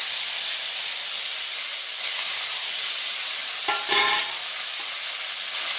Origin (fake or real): real